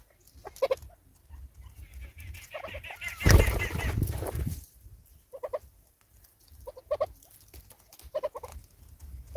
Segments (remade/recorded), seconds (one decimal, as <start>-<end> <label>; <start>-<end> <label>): 0.0-2.0 recorded; 2.0-2.7 remade; 2.7-9.4 recorded